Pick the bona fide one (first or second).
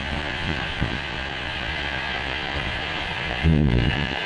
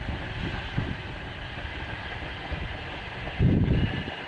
second